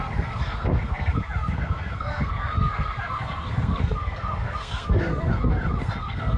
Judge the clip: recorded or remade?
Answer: remade